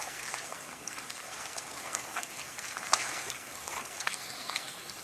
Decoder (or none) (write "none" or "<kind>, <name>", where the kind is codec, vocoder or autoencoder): codec, SNAC